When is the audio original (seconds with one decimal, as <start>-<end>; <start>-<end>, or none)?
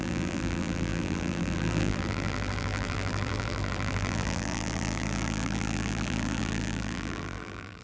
none